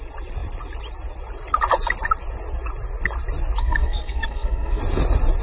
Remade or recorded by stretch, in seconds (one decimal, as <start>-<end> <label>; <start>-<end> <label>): 0.0-3.6 recorded; 3.6-4.8 remade; 4.8-5.4 recorded